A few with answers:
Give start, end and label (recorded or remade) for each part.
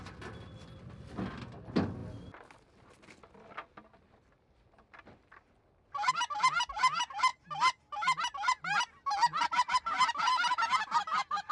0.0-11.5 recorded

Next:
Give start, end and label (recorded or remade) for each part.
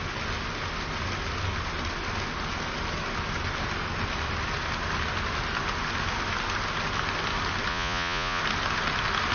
0.0-7.7 recorded; 7.7-8.4 remade; 8.4-9.3 recorded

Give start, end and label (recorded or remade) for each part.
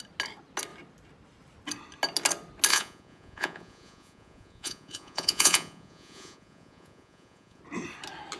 0.0-2.7 recorded; 2.7-7.6 remade; 7.6-8.4 recorded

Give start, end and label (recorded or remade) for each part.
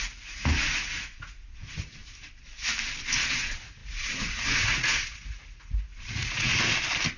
0.0-2.0 remade; 2.0-3.3 recorded; 3.3-6.5 remade; 6.5-7.2 recorded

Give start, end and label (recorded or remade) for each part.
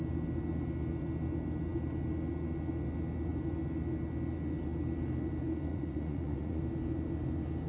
0.0-5.7 recorded; 5.7-6.6 remade; 6.6-7.7 recorded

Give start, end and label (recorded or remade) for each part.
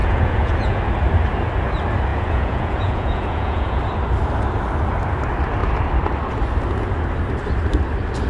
0.0-0.8 remade; 0.8-2.1 recorded; 2.1-3.8 remade; 3.8-8.3 recorded